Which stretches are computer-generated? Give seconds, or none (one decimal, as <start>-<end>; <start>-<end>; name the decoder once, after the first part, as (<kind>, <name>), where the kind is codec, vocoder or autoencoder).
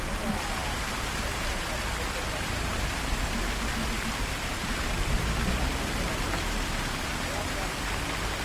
none